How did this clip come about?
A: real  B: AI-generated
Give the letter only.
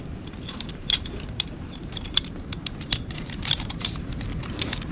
B